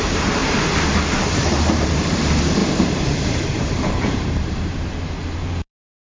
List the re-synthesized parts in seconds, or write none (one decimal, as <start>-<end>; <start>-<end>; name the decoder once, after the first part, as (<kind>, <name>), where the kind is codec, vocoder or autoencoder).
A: 0.0-6.2 (vocoder, BigVGAN v2)